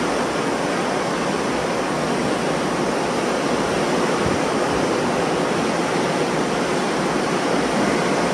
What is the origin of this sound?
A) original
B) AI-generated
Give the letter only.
A